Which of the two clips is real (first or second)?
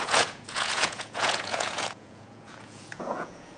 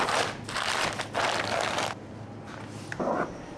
second